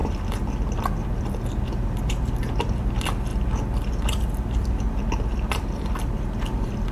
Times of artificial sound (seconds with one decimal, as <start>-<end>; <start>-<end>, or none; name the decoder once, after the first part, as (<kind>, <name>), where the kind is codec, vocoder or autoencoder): none